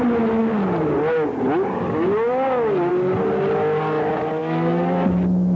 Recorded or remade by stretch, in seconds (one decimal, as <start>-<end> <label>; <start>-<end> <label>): 0.0-5.5 recorded